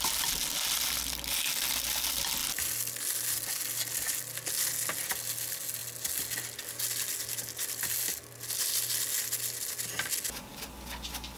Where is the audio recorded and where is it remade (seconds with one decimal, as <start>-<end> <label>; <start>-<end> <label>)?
0.0-11.4 recorded